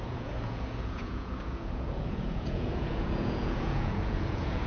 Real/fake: fake